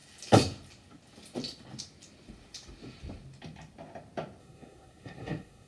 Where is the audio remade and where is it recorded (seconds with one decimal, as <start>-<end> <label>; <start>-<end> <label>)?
0.0-4.4 recorded; 4.4-5.7 remade